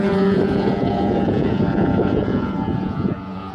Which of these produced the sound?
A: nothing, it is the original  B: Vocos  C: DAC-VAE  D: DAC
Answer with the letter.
B